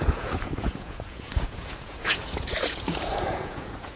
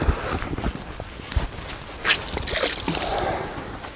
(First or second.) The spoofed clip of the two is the first